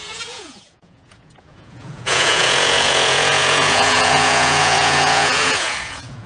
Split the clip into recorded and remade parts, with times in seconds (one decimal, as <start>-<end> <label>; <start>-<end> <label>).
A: 0.0-6.3 remade